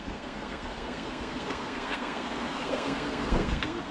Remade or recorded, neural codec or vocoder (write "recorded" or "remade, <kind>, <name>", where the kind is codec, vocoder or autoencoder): remade, codec, SNAC